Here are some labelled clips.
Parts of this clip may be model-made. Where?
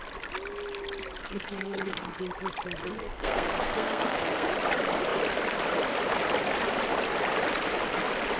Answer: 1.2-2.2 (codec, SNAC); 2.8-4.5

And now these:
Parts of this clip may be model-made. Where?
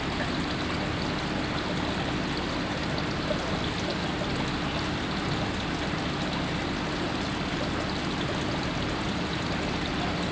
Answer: none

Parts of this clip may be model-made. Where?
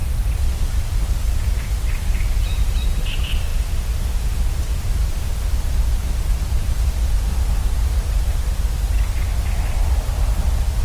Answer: none